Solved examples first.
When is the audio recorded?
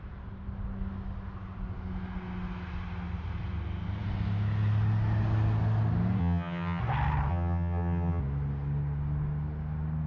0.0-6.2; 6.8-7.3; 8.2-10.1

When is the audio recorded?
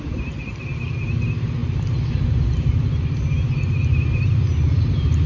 0.0-5.3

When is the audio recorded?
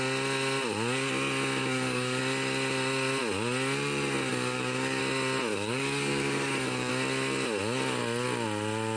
0.0-1.6; 2.2-4.3; 5.0-5.5; 6.9-9.0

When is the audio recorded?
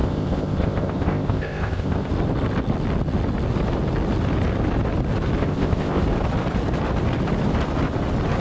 2.1-5.4; 6.0-8.4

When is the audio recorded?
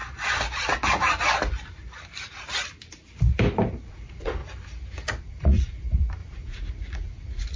0.0-3.9; 4.4-5.2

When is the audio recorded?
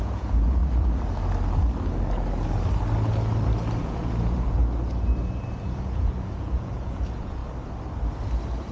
0.6-3.8; 4.6-5.5; 7.4-8.7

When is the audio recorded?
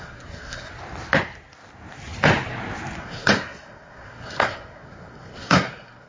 0.7-3.0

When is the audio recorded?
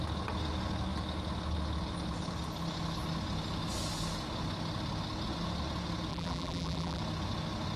0.0-6.1; 7.0-7.8